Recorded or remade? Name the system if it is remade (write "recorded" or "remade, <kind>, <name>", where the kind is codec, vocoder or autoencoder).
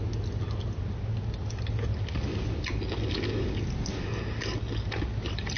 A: recorded